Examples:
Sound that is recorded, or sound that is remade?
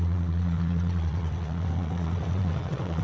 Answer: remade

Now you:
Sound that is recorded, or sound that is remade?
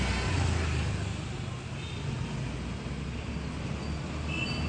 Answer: recorded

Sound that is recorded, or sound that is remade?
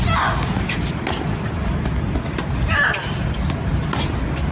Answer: recorded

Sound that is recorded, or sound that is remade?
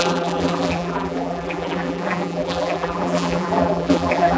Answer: remade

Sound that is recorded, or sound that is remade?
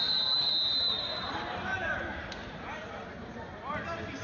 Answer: recorded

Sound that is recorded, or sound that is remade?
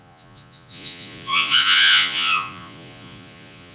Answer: remade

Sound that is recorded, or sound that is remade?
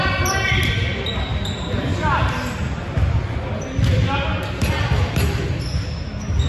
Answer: recorded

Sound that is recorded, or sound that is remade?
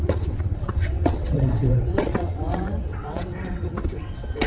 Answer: remade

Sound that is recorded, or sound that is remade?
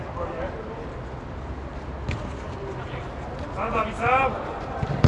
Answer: recorded